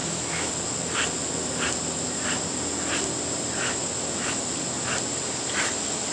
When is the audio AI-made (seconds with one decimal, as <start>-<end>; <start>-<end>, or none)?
0.0-0.5